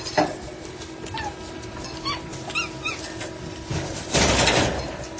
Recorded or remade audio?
recorded